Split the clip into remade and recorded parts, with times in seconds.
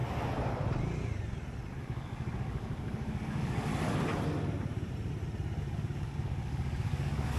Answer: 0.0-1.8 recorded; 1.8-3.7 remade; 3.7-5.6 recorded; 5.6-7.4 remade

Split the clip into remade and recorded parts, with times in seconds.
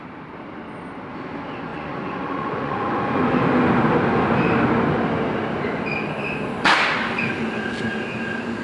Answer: 0.0-1.7 recorded; 1.7-3.2 remade; 3.2-8.6 recorded